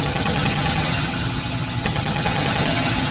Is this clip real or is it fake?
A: fake